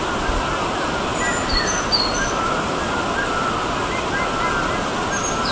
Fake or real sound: real